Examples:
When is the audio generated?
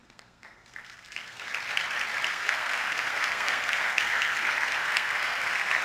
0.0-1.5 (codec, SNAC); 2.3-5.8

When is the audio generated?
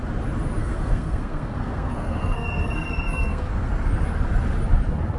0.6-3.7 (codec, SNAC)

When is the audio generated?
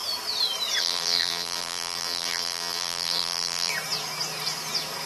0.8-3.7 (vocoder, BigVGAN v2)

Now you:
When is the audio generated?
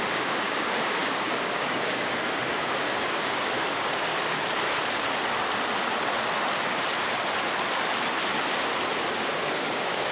0.0-4.1 (codec, DAC); 9.1-10.1